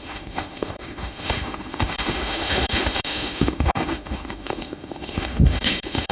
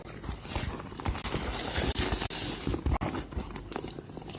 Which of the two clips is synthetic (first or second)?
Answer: first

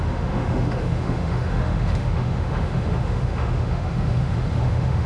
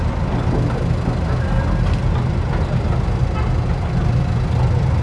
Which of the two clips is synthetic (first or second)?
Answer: first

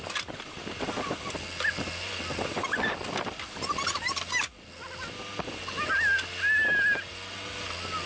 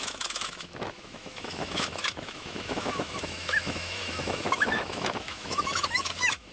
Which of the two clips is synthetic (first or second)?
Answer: second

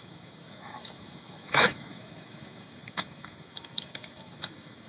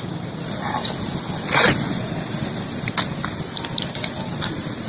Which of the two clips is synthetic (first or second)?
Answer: first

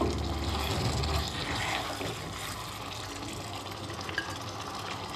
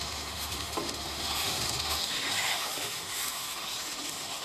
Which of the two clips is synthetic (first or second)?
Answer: second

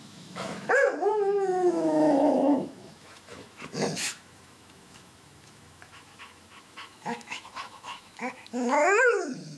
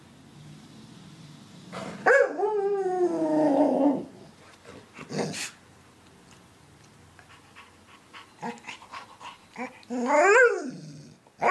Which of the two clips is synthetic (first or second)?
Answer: first